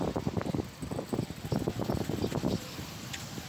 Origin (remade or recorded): recorded